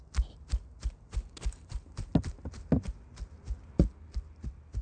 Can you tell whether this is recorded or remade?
recorded